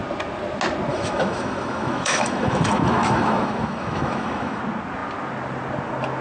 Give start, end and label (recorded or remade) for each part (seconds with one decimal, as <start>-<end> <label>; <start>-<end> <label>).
0.0-0.9 recorded; 0.9-4.6 remade; 4.6-6.2 recorded